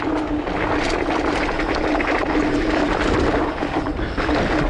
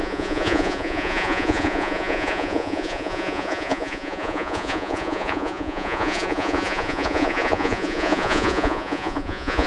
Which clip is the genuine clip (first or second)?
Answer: first